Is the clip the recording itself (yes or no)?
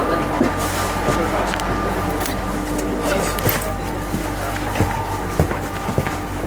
yes